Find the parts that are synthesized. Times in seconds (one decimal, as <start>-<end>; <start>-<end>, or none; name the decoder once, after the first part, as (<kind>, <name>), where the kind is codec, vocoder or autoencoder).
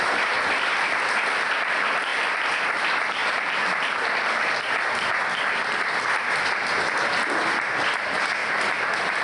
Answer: 2.1-2.8 (vocoder, BigVGAN v2); 3.2-4.4; 8.4-9.2